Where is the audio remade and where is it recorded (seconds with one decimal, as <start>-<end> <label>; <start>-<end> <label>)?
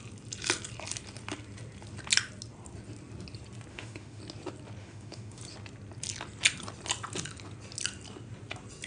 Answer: 0.0-3.7 recorded; 3.7-4.2 remade; 4.2-4.8 recorded; 4.8-5.4 remade; 5.4-8.9 recorded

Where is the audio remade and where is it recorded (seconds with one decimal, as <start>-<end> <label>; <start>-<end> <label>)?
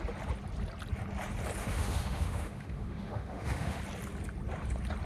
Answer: 0.0-1.6 recorded; 1.6-3.8 remade; 3.8-5.1 recorded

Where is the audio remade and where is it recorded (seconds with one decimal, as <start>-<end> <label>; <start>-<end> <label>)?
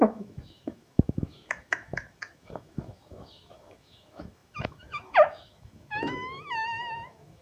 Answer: 0.0-7.4 remade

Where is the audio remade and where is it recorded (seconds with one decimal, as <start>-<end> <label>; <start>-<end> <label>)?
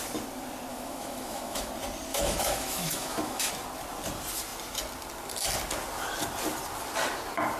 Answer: 0.0-0.7 recorded; 0.7-1.7 remade; 1.7-2.1 recorded; 2.1-3.5 remade; 3.5-7.6 recorded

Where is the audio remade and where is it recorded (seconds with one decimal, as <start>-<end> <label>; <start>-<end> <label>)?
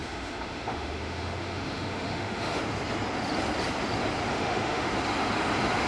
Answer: 0.0-2.6 remade; 2.6-4.3 recorded; 4.3-4.9 remade; 4.9-5.9 recorded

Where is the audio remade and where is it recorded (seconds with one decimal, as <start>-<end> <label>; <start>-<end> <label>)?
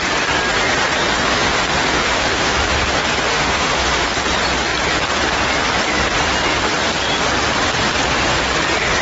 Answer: 0.0-1.3 recorded; 1.3-2.8 remade; 2.8-3.3 recorded; 3.3-4.0 remade; 4.0-9.0 recorded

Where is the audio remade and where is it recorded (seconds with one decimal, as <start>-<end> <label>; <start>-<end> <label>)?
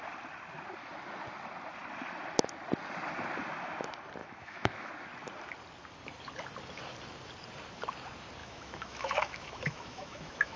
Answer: 0.0-4.2 recorded; 4.2-4.9 remade; 4.9-8.4 recorded; 8.4-10.6 remade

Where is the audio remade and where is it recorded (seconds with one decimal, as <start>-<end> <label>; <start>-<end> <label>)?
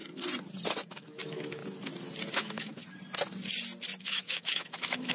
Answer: 0.0-0.9 recorded; 0.9-1.6 remade; 1.6-2.3 recorded; 2.3-2.8 remade; 2.8-4.0 recorded; 4.0-5.1 remade